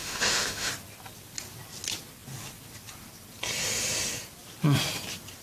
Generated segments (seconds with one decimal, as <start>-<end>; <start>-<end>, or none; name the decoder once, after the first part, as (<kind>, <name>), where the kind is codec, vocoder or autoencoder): 0.0-0.7 (autoencoder, DAC-VAE)